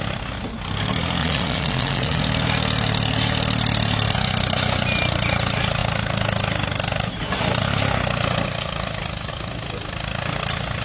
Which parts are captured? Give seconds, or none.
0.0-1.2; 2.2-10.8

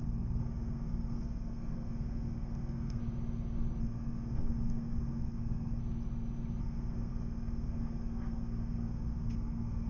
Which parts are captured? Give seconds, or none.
3.0-3.8; 5.8-6.6